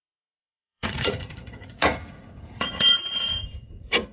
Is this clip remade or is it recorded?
remade